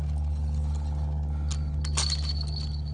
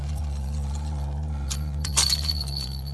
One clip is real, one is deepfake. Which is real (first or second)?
first